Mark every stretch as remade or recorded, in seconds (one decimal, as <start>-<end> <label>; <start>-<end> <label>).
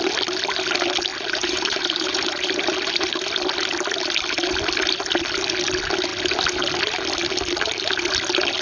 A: 0.0-1.1 recorded; 1.1-3.1 remade; 3.1-8.6 recorded